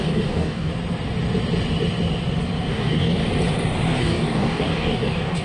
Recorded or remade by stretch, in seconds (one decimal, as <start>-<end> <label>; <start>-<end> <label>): 0.0-0.7 remade; 0.7-2.7 recorded; 2.7-3.2 remade; 3.2-4.0 recorded; 4.0-5.4 remade